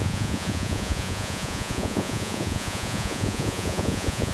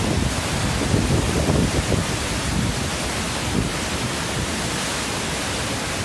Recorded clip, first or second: second